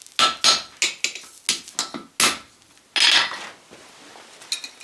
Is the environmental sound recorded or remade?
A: recorded